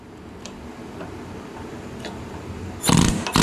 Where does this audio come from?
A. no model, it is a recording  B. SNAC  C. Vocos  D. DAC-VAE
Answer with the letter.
A